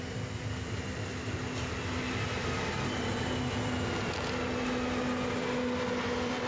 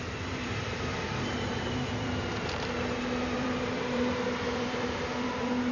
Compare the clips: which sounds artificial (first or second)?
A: second